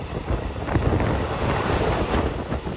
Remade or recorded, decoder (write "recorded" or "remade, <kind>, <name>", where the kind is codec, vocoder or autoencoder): recorded